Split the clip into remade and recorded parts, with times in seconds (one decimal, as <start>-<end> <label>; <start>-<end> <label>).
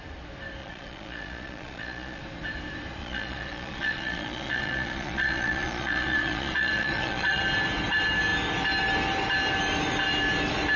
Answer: 0.0-0.6 recorded; 0.6-2.2 remade; 2.2-3.0 recorded; 3.0-7.4 remade; 7.4-10.8 recorded